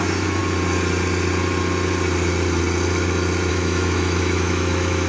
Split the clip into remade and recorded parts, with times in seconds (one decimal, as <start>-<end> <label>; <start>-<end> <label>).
0.0-0.4 remade; 0.4-3.5 recorded; 3.5-5.1 remade